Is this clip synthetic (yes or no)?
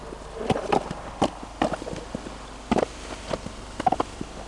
no